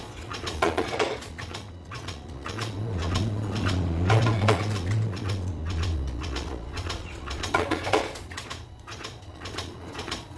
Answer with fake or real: fake